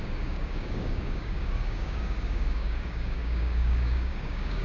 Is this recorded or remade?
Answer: remade